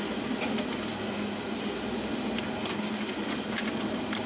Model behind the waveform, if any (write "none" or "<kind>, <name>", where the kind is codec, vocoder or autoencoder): none